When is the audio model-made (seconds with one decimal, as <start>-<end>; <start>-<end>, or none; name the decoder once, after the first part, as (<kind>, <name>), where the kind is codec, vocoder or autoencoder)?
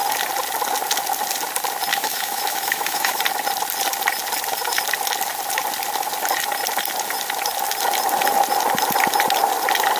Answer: 1.9-3.2 (autoencoder, DAC-VAE)